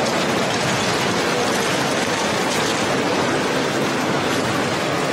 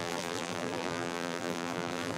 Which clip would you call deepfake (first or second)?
second